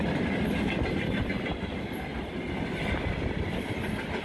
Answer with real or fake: real